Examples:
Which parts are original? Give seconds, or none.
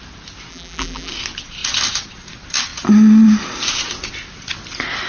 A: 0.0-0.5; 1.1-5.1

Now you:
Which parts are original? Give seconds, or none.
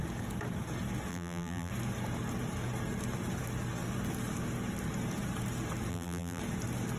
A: 0.0-1.1; 1.7-5.9; 6.4-7.0